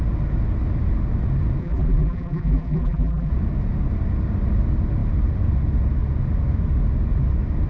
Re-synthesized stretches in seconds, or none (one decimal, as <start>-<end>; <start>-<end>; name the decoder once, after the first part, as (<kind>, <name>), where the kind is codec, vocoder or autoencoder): 1.6-3.3 (vocoder, BigVGAN v2)